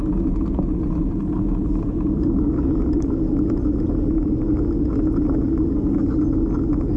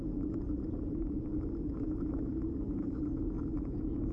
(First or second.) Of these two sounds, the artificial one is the second